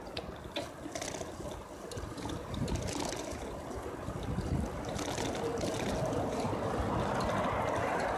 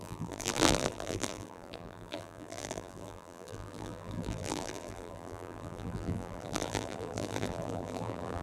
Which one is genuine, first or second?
first